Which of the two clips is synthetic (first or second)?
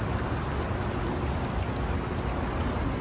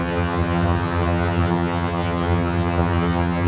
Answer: second